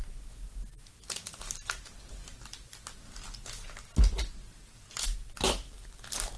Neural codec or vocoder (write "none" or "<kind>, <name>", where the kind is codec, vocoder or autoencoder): none